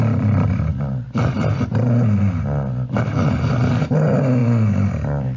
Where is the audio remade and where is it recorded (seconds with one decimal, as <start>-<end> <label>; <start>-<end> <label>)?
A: 0.0-5.4 recorded